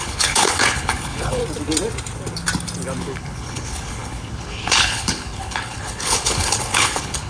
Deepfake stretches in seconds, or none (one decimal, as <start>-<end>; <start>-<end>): 0.0-1.4; 3.0-7.3

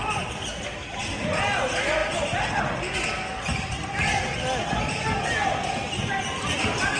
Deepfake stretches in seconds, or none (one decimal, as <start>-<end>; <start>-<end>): none

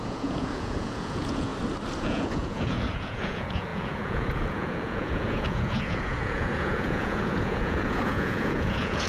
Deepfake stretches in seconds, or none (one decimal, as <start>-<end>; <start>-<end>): 0.0-1.5; 2.0-9.1

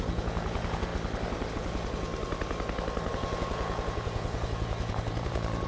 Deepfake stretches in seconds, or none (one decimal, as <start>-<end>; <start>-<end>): 0.0-0.9; 1.5-2.1; 3.1-5.7

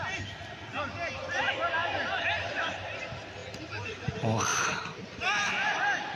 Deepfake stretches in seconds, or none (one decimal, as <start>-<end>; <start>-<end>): 1.8-3.0; 3.4-4.1; 4.5-5.8